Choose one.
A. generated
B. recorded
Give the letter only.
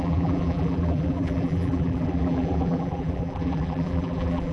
A